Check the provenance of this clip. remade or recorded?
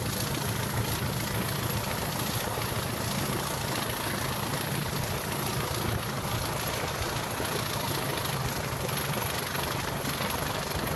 recorded